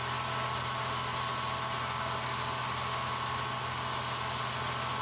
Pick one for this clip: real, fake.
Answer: real